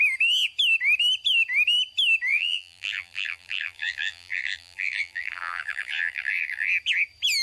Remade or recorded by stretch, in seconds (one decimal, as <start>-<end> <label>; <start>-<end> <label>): 0.0-2.3 recorded; 2.3-6.7 remade; 6.7-7.4 recorded